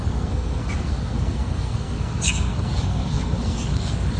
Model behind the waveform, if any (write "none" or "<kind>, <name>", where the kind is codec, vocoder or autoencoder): codec, SNAC